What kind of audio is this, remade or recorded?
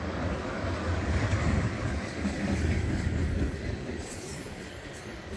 remade